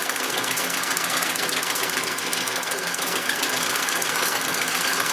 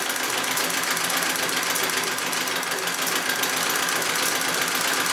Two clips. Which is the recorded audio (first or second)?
second